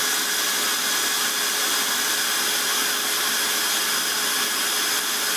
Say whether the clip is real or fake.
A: real